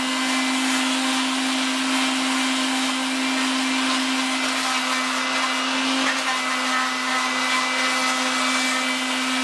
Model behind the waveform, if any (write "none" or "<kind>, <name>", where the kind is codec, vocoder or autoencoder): none